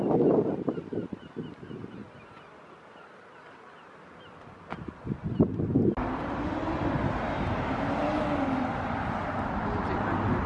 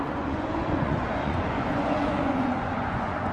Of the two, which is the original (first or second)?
first